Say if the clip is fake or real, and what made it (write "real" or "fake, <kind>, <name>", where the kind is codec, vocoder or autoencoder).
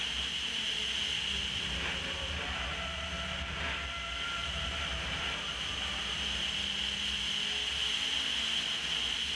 real